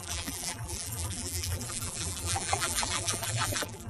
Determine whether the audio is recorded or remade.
remade